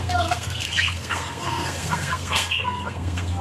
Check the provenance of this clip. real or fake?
fake